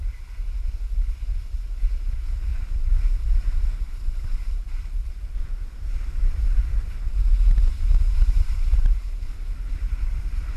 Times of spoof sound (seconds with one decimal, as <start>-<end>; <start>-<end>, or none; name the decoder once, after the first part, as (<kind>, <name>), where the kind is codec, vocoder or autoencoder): 2.5-6.4 (vocoder, BigVGAN v2); 7.7-10.2